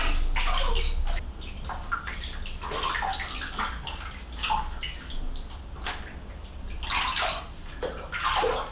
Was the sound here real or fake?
real